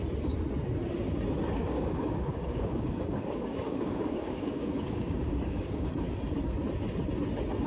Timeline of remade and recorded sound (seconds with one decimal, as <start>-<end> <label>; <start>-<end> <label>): 0.0-1.6 recorded; 1.6-5.9 remade; 5.9-7.7 recorded